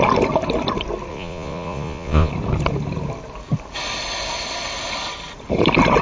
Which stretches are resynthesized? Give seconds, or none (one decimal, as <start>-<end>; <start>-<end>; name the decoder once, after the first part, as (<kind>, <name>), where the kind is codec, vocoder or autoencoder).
1.1-2.3 (vocoder, Vocos)